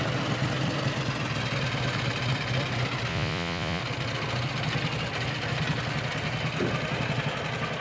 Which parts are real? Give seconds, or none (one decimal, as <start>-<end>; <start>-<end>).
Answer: 0.0-3.1; 3.8-7.8